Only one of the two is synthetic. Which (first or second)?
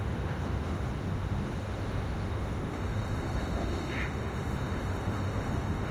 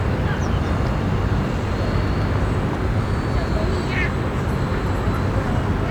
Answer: first